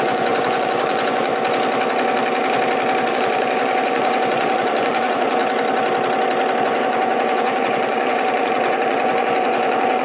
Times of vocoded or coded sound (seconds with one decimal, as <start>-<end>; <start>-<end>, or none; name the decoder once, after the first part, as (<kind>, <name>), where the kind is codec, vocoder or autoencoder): 0.0-1.3 (vocoder, Vocos); 3.1-5.4; 6.6-10.0